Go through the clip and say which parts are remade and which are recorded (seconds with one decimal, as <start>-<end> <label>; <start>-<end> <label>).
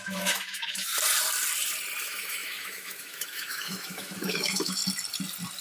0.0-0.9 remade; 0.9-2.0 recorded; 2.0-4.8 remade; 4.8-5.6 recorded